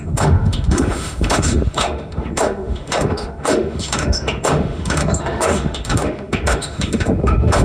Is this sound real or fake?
fake